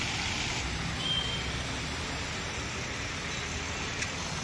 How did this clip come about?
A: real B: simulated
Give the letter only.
A